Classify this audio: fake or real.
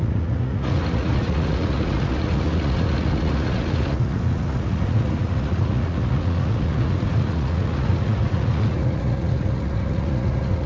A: fake